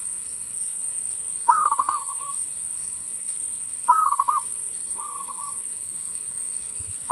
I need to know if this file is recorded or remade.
remade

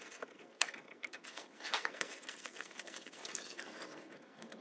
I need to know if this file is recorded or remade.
remade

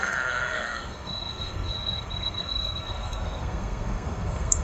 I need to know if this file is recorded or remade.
remade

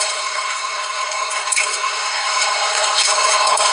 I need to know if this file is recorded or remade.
remade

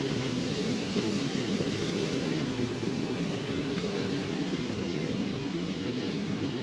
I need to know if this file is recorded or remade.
remade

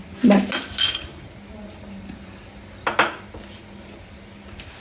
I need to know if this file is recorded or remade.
recorded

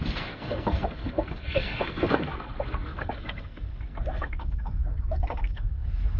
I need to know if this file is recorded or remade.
remade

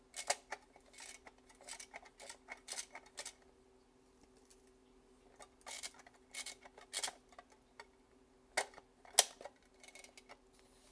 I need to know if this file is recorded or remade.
recorded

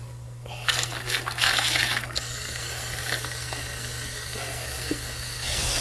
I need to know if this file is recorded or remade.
remade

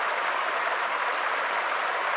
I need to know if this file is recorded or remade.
recorded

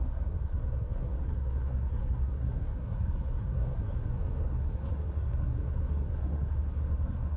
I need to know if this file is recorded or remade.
remade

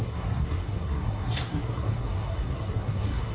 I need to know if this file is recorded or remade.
remade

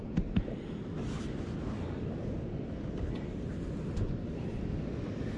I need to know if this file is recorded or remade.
recorded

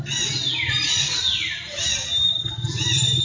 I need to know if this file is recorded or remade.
recorded